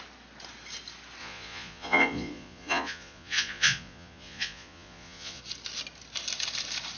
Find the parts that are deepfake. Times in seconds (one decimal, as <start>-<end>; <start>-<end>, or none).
1.2-5.4